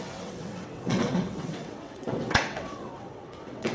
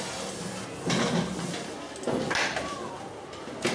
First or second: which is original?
second